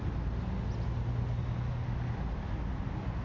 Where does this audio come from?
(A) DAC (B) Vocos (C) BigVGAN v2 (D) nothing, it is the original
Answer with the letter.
D